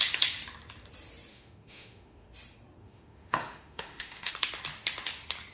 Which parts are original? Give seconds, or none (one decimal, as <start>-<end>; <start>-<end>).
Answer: 0.0-1.3; 2.3-2.8; 4.3-5.5